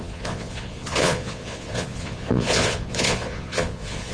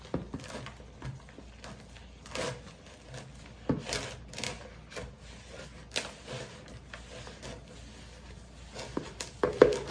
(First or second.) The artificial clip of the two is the first